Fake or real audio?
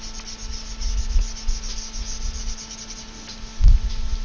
real